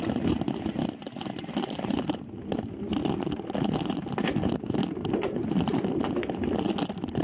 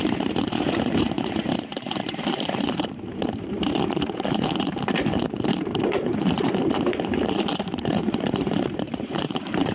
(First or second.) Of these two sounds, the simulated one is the second